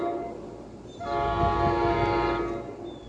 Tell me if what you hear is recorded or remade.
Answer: recorded